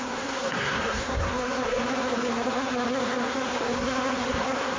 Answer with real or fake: fake